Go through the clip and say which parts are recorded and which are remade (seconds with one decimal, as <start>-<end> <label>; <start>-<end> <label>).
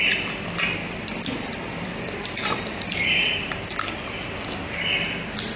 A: 0.0-0.8 recorded; 0.8-4.2 remade; 4.2-5.6 recorded